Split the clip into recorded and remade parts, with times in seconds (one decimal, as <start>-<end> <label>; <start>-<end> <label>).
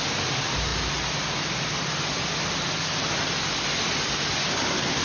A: 0.0-5.0 recorded